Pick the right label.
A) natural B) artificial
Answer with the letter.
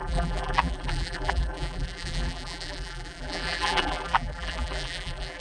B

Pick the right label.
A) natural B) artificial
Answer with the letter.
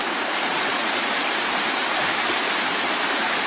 B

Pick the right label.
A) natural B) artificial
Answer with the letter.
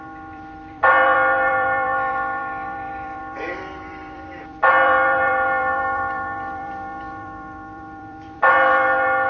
B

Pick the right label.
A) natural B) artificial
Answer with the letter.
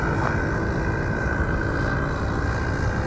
A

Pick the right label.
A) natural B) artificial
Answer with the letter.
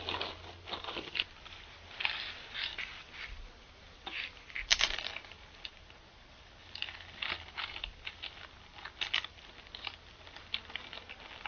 A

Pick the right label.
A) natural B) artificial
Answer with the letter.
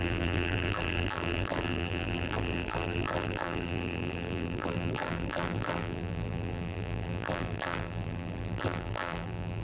B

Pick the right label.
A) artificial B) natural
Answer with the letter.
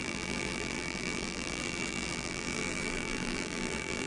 A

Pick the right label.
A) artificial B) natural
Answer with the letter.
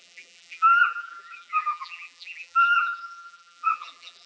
A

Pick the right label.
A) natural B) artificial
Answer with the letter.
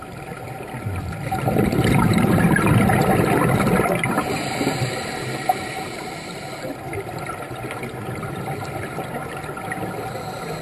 B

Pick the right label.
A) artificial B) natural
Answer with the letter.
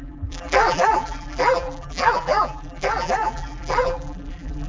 A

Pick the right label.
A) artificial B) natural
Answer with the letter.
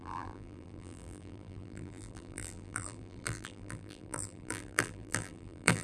A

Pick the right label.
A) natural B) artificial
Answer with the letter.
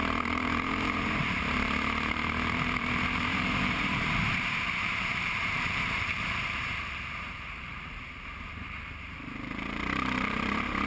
B